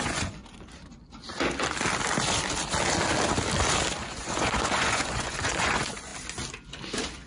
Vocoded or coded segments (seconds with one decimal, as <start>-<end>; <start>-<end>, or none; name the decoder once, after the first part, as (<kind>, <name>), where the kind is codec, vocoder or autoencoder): 0.0-0.4 (vocoder, Vocos); 4.0-6.1